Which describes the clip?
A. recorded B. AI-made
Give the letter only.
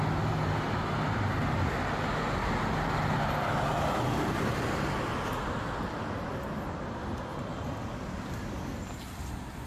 A